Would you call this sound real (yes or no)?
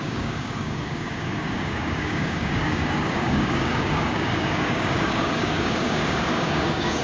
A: no